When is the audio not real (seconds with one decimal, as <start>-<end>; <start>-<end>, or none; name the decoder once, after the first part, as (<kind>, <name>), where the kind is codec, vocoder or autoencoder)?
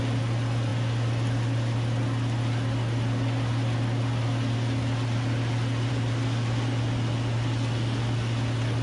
none